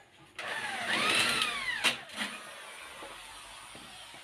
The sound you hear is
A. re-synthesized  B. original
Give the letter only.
B